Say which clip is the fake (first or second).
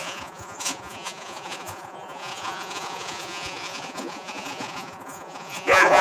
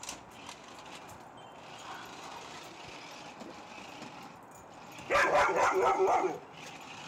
first